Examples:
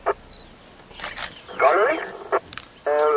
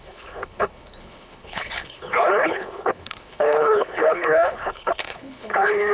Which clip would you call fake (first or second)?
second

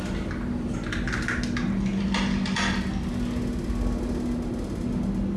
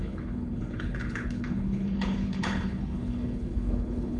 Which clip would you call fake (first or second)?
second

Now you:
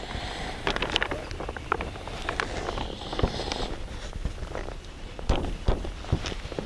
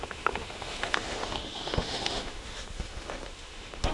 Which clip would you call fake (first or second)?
second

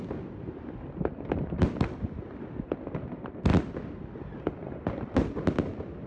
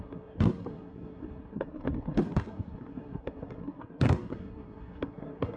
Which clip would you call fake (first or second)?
second